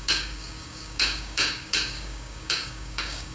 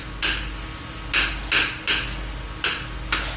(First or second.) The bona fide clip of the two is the second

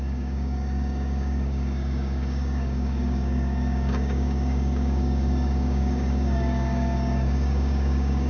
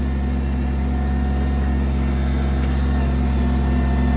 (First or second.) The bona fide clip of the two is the second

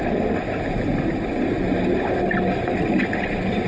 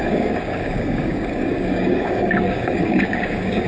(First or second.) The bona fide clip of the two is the first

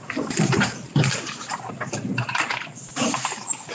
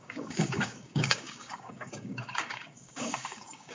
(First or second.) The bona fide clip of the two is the first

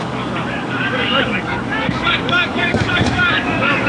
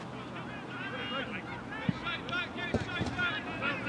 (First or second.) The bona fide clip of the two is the second